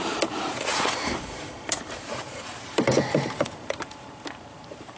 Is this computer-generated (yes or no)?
yes